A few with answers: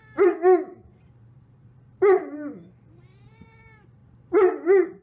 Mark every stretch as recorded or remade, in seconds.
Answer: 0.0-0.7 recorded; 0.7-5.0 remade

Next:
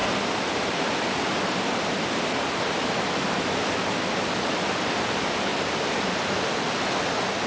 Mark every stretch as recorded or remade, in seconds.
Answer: 0.0-3.4 recorded; 3.4-7.5 remade

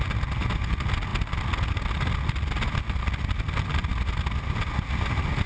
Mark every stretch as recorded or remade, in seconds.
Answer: 0.0-5.5 recorded

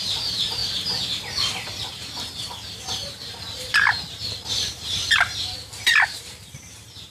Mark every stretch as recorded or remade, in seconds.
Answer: 0.0-0.6 remade; 0.6-1.7 recorded; 1.7-7.1 remade

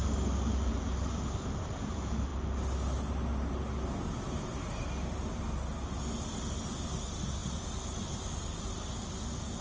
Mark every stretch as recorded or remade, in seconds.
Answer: 0.0-9.6 recorded

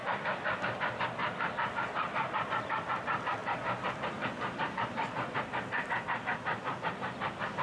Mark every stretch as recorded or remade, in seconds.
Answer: 0.0-0.6 remade; 0.6-1.2 recorded; 1.2-2.5 remade; 2.5-3.4 recorded; 3.4-5.9 remade; 5.9-7.6 recorded

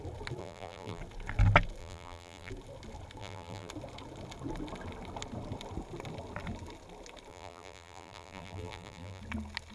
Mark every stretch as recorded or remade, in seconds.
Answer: 0.0-0.4 recorded; 0.4-1.0 remade; 1.0-1.8 recorded; 1.8-2.5 remade; 2.5-3.2 recorded; 3.2-3.7 remade; 3.7-7.3 recorded; 7.3-9.2 remade; 9.2-9.7 recorded